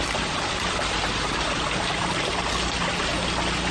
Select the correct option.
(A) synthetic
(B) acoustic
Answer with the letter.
B